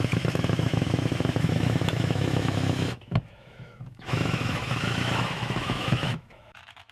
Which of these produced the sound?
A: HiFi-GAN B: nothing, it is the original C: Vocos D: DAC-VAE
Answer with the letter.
D